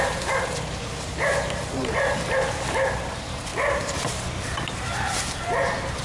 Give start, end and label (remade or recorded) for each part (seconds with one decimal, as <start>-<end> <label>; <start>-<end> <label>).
0.0-6.0 remade